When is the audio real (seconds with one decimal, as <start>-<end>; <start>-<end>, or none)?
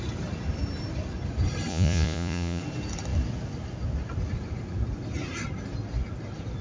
0.0-1.7; 2.6-6.6